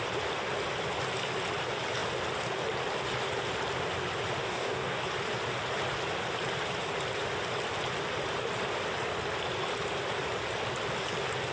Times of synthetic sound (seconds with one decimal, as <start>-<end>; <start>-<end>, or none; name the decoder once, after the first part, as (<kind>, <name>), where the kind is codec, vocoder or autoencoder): 4.4-5.0 (codec, DAC)